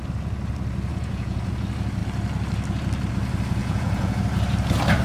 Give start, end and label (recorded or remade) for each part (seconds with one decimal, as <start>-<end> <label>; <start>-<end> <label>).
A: 0.0-0.9 recorded; 0.9-1.5 remade; 1.5-3.6 recorded; 3.6-4.2 remade; 4.2-5.0 recorded